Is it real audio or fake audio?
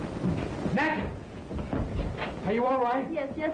real